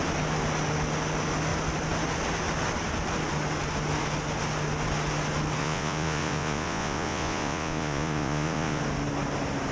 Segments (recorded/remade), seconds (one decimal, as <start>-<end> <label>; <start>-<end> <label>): 0.0-5.6 recorded; 5.6-8.8 remade; 8.8-9.7 recorded